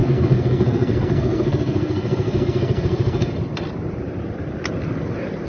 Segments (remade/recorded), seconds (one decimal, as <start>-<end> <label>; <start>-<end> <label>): 0.0-3.3 remade; 3.3-5.5 recorded